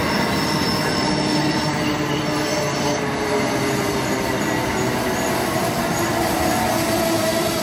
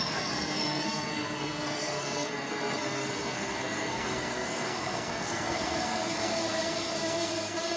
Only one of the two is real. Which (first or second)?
first